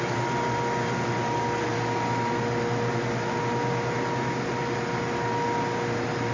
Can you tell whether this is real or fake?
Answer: real